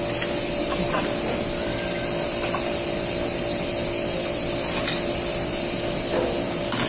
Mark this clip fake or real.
real